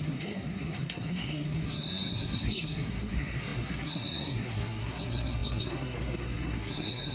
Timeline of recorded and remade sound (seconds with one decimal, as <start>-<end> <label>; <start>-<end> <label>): 0.0-7.1 remade